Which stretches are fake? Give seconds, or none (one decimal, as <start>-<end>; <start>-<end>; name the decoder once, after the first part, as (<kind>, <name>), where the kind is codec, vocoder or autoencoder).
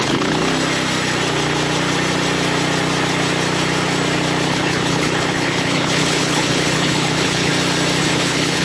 0.0-0.4 (codec, HILCodec); 4.5-7.5; 8.0-8.6